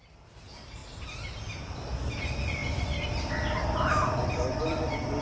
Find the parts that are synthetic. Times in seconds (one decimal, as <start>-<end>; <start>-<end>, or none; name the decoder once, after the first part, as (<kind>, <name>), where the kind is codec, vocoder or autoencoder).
none